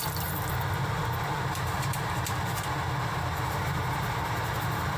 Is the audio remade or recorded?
remade